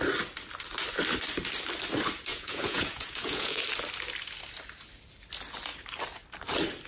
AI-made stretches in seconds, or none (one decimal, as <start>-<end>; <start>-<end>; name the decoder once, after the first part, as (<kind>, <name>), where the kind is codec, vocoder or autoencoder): 2.3-3.6 (vocoder, Vocos)